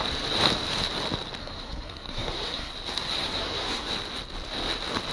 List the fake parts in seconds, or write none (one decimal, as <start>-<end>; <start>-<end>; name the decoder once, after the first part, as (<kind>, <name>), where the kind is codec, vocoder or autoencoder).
1.4-2.7 (codec, SNAC); 3.2-3.9